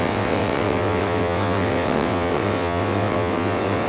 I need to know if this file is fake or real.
fake